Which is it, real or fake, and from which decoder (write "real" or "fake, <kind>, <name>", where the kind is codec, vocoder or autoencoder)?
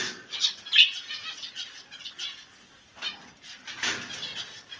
real